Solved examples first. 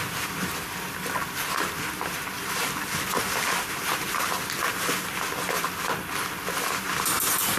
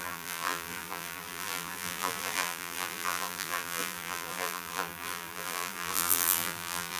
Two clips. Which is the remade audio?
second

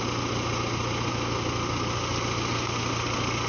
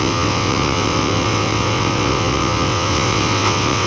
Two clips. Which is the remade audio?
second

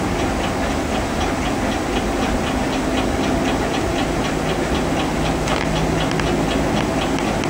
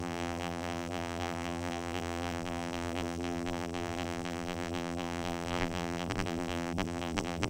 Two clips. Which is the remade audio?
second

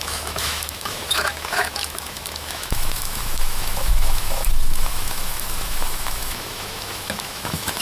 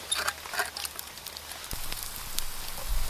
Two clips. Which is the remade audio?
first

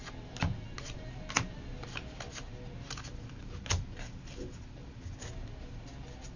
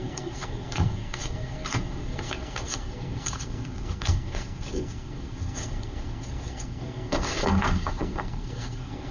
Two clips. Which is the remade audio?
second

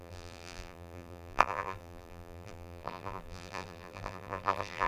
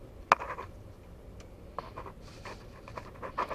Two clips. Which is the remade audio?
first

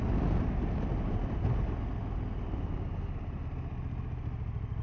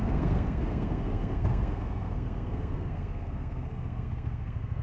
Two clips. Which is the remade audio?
second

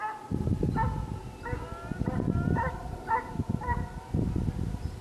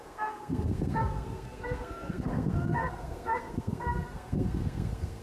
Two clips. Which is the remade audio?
second